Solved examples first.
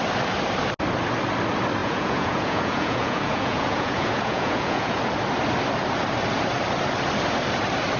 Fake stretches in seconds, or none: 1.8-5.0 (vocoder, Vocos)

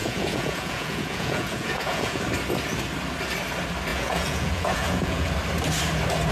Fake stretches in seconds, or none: 0.0-2.2 (vocoder, Vocos); 3.9-5.3